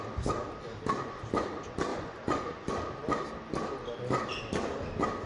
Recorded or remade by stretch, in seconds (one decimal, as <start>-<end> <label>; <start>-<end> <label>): 0.0-1.9 recorded; 1.9-2.7 remade; 2.7-5.3 recorded